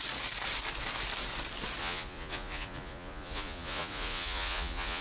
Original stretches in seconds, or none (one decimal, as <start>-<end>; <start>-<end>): 0.0-1.8